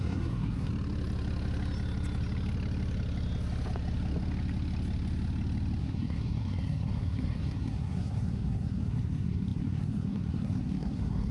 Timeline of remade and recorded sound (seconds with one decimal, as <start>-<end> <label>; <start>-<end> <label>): 0.0-0.7 remade; 0.7-5.8 recorded; 5.8-11.3 remade